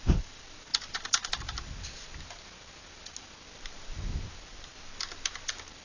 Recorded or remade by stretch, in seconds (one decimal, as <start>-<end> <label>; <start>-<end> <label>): 0.0-5.8 recorded